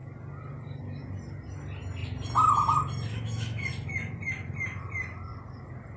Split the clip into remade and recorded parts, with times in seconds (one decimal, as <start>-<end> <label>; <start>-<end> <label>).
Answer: 0.0-3.1 recorded; 3.1-3.7 remade; 3.7-6.0 recorded